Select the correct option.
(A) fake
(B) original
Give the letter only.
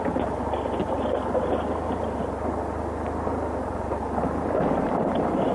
B